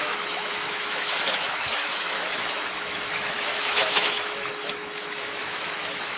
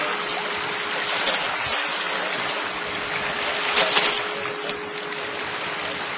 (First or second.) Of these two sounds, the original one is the second